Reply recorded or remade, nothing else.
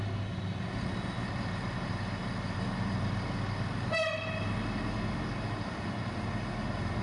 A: recorded